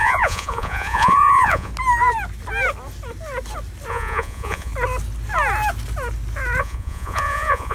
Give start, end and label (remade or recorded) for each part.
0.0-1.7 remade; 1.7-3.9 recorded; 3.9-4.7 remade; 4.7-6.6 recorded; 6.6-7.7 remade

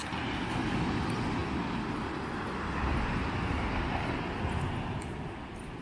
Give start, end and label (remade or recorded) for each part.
0.0-5.8 recorded

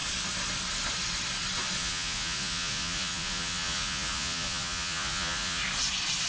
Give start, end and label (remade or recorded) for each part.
0.0-1.8 recorded; 1.8-5.6 remade; 5.6-6.3 recorded

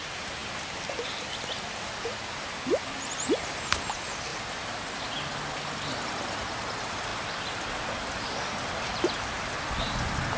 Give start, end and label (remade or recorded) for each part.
0.0-10.4 recorded